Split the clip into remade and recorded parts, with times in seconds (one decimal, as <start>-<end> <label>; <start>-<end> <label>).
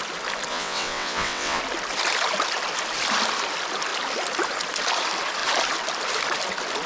0.0-0.5 recorded; 0.5-1.6 remade; 1.6-6.9 recorded